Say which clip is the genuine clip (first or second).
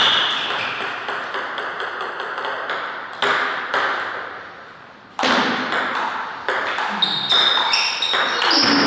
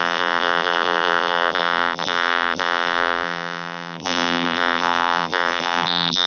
first